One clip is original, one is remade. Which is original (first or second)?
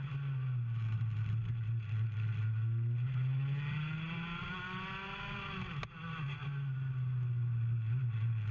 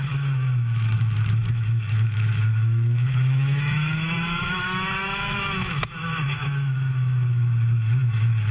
first